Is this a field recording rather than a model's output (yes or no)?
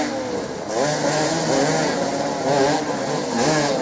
yes